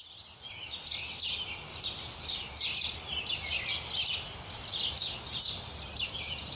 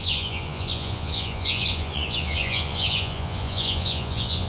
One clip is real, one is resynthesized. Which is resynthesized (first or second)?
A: second